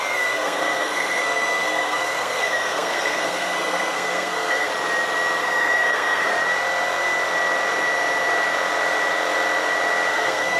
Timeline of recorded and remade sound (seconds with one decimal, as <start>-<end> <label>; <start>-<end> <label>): 0.0-4.7 remade; 4.7-5.4 recorded; 5.4-6.3 remade; 6.3-10.1 recorded; 10.1-10.6 remade

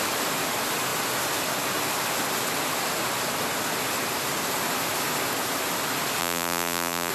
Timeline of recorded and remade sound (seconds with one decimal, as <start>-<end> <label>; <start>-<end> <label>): 0.0-6.2 recorded; 6.2-7.1 remade

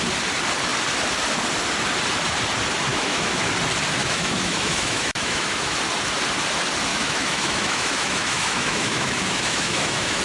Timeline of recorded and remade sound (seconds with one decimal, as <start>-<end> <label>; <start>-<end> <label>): 0.0-2.9 recorded; 2.9-3.5 remade; 3.5-4.0 recorded; 4.0-5.8 remade; 5.8-6.9 recorded; 6.9-10.2 remade

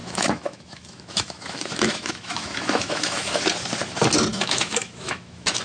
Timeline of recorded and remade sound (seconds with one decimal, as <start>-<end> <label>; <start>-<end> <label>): 0.0-3.4 remade; 3.4-4.3 recorded; 4.3-5.6 remade

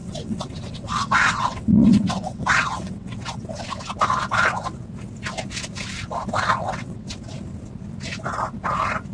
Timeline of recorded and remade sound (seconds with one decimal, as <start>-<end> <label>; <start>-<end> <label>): 0.0-3.5 remade; 3.5-6.6 recorded; 6.6-7.1 remade; 7.1-9.1 recorded

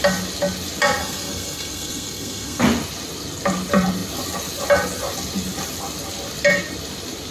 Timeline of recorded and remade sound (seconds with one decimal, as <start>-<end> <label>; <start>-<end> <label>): 0.0-1.0 recorded; 1.0-2.6 remade; 2.6-7.3 recorded

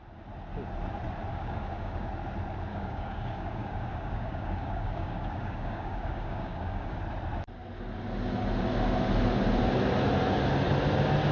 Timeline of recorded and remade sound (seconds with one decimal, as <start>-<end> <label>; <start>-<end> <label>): 0.0-1.3 recorded; 1.3-2.1 remade; 2.1-2.7 recorded; 2.7-7.0 remade; 7.0-11.3 recorded

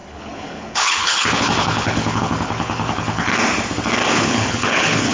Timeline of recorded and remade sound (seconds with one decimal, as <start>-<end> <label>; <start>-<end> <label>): 0.0-3.3 remade; 3.3-4.1 recorded; 4.1-5.1 remade